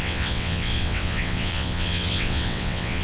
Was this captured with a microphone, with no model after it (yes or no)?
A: no